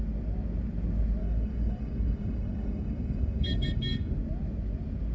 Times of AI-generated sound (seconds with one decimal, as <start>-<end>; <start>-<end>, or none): 1.2-4.1

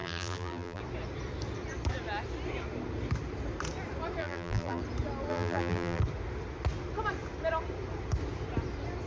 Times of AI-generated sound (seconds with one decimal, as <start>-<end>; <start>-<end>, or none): 0.0-0.8; 4.2-4.8; 5.3-6.0

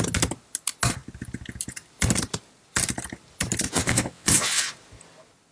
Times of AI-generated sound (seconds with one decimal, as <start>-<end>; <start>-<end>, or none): 3.7-4.7

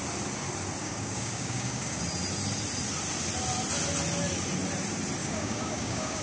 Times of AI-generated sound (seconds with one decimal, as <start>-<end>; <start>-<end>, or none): 0.8-2.0; 5.2-6.2

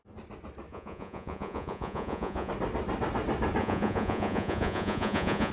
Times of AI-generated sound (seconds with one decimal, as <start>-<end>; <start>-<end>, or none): 0.7-2.5; 3.6-5.5

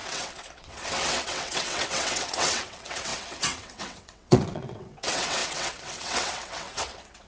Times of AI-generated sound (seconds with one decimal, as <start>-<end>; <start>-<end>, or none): 0.0-7.3

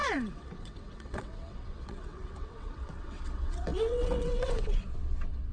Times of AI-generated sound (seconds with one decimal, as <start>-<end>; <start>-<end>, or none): 0.0-5.5